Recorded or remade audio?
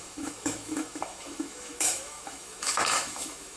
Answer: remade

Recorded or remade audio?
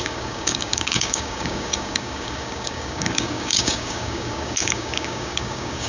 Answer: remade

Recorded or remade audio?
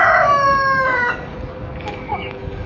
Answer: remade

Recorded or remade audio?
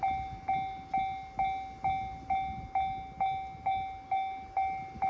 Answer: recorded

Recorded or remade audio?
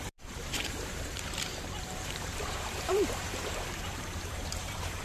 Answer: remade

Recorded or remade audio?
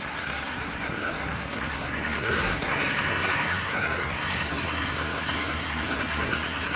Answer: remade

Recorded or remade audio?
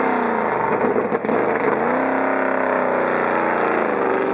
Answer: recorded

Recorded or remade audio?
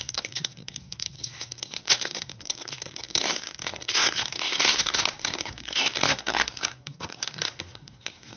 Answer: remade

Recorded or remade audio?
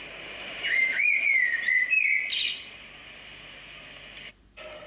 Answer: recorded